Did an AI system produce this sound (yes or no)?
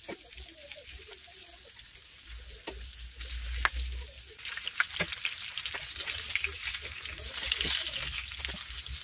no